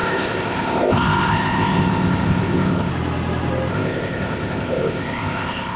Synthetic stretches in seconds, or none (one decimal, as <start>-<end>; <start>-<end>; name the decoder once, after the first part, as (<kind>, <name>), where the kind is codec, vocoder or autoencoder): 0.0-2.9 (codec, ZipCodec); 3.7-5.8